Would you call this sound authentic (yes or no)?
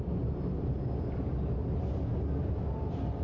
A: yes